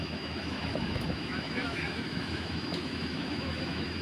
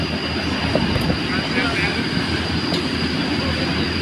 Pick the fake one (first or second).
first